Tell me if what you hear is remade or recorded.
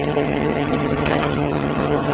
remade